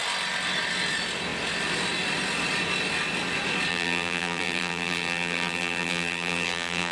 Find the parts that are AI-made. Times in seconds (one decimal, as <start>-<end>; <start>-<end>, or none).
3.7-6.9